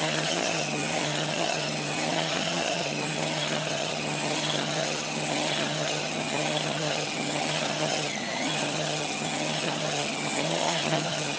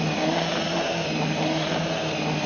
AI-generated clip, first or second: first